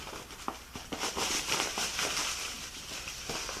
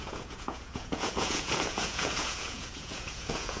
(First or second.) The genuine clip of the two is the first